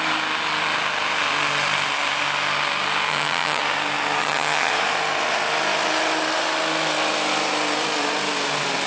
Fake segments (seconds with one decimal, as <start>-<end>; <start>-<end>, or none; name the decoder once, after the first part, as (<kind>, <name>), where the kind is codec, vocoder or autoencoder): 3.1-3.6 (vocoder, HiFi-GAN); 4.2-4.7